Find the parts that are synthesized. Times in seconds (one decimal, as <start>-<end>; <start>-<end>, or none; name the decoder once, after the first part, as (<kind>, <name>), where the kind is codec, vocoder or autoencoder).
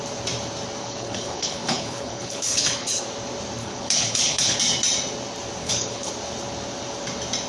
0.8-3.0 (codec, HILCodec); 3.6-4.6; 5.6-6.1